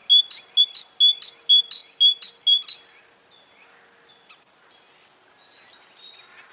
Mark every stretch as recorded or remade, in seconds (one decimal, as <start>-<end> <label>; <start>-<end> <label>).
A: 0.0-6.5 recorded

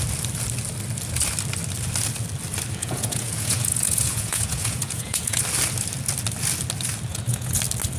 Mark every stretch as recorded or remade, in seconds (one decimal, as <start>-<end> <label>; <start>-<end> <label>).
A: 0.0-2.8 recorded; 2.8-5.4 remade; 5.4-7.1 recorded; 7.1-7.6 remade; 7.6-8.0 recorded

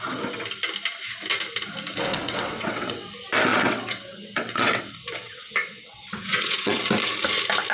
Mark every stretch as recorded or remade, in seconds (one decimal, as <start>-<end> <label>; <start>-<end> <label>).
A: 0.0-2.1 recorded; 2.1-3.1 remade; 3.1-3.5 recorded; 3.5-4.8 remade; 4.8-5.2 recorded; 5.2-6.8 remade; 6.8-7.7 recorded